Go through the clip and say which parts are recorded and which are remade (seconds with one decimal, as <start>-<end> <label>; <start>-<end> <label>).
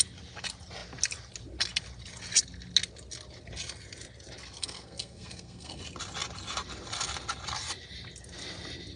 0.0-4.6 recorded; 4.6-5.8 remade; 5.8-9.0 recorded